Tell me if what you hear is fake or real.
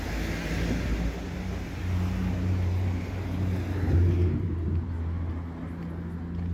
real